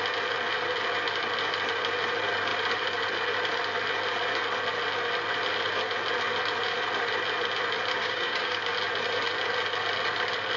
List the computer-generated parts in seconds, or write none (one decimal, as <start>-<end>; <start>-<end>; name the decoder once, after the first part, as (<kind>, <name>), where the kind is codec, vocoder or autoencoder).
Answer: 8.0-8.6 (codec, DAC)